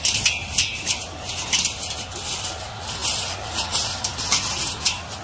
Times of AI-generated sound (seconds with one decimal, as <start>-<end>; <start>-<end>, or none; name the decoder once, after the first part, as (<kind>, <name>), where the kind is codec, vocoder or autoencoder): none